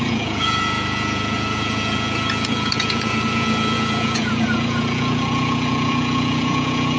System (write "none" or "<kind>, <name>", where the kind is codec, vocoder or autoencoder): vocoder, Vocos